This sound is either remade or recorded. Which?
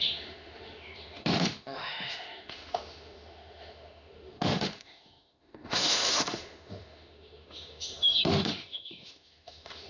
remade